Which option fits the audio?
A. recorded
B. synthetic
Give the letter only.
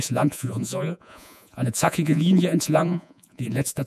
B